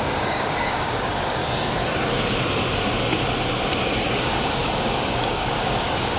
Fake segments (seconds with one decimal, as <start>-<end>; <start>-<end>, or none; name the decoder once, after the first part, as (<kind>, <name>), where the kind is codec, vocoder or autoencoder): 0.0-1.4 (codec, DAC); 4.1-6.2